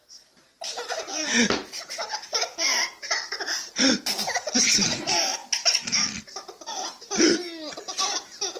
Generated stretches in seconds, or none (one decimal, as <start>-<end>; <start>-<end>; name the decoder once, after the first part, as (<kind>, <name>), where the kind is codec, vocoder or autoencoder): none